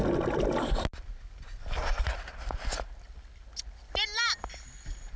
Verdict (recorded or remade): recorded